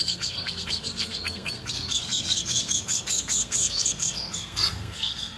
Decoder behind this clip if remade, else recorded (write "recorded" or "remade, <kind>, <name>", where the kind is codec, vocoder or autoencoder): remade, codec, SNAC